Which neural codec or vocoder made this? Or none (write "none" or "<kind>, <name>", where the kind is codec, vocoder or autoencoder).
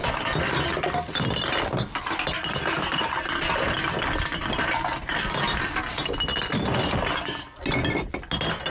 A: none